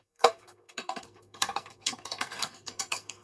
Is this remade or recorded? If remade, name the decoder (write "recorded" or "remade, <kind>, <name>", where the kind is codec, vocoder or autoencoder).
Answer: remade, codec, SNAC